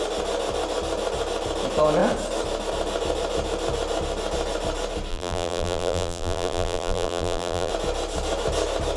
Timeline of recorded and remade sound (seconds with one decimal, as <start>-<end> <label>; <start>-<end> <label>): 0.0-5.1 recorded; 5.1-7.7 remade; 7.7-9.0 recorded